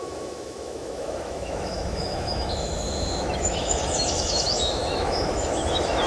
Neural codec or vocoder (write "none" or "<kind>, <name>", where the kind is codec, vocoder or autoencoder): autoencoder, DAC-VAE